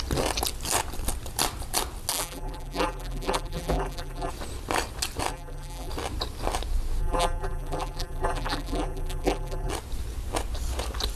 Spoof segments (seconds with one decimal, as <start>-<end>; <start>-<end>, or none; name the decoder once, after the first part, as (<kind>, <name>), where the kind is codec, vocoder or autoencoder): 2.1-4.3 (vocoder, BigVGAN v2); 5.3-5.9; 7.0-9.7